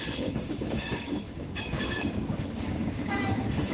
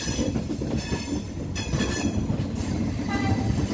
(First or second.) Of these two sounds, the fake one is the first